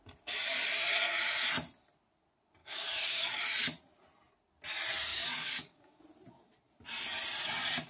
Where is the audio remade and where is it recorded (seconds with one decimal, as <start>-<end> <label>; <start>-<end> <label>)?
0.0-2.6 recorded; 2.6-3.4 remade; 3.4-5.1 recorded; 5.1-6.0 remade; 6.0-7.9 recorded